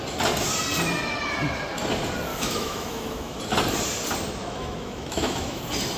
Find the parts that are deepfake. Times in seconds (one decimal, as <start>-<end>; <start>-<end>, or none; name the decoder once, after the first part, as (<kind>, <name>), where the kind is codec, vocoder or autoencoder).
2.3-3.4 (autoencoder, DAC-VAE); 4.4-5.6